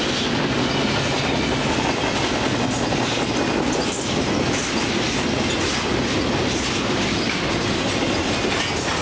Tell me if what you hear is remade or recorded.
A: recorded